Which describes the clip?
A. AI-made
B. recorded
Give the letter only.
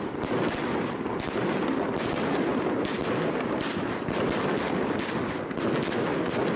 B